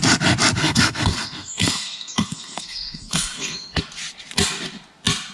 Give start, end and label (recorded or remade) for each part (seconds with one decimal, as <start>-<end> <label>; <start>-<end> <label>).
0.0-0.6 recorded; 0.6-3.8 remade; 3.8-5.3 recorded